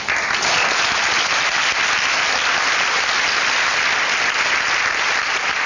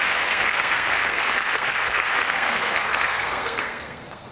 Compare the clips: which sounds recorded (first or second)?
first